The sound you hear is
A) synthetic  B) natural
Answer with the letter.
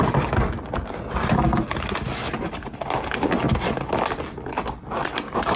B